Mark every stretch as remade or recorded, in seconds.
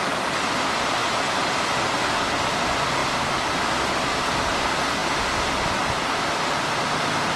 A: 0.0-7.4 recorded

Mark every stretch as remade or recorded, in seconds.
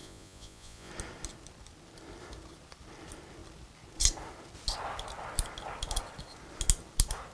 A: 0.0-0.9 remade; 0.9-7.3 recorded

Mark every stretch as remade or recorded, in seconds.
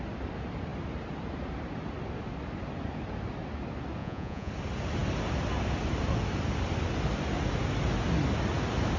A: 0.0-4.0 recorded; 4.0-4.5 remade; 4.5-9.0 recorded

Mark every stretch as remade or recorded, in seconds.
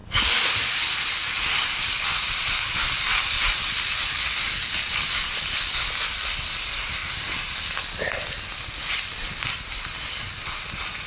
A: 0.0-11.1 recorded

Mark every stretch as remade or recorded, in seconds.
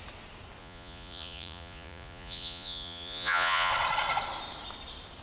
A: 0.0-0.6 recorded; 0.6-3.7 remade; 3.7-5.2 recorded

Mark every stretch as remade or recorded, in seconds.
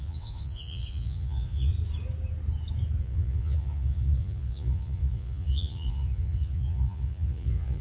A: 0.0-1.7 remade; 1.7-3.0 recorded; 3.0-7.8 remade